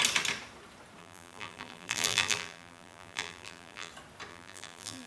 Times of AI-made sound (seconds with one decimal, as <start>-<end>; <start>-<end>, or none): 1.0-3.9; 4.3-5.1